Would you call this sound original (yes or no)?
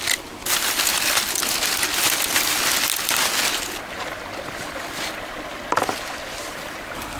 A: yes